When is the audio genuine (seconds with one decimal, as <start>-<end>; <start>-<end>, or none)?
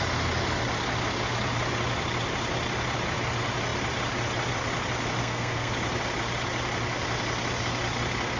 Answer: 0.0-5.2; 5.7-8.4